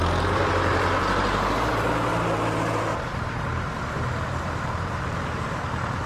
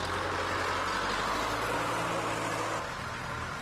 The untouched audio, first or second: second